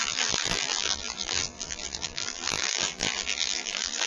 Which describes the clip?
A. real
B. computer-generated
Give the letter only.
B